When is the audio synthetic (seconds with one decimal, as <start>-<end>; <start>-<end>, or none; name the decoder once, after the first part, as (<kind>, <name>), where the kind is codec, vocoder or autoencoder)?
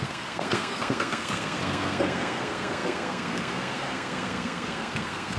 0.0-5.4 (codec, SNAC)